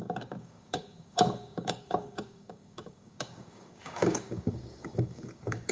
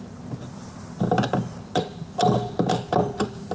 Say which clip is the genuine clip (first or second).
second